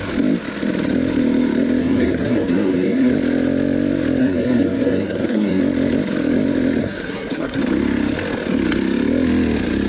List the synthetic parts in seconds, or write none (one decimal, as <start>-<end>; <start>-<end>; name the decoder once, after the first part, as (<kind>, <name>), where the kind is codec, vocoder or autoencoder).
1.8-3.1 (codec, SNAC); 4.2-5.6; 6.8-7.6